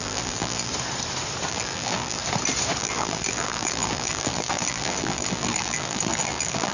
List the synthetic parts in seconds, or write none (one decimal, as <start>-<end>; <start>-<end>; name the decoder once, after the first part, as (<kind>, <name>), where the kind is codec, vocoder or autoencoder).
0.0-0.7 (vocoder, BigVGAN v2); 1.5-2.2; 2.8-6.7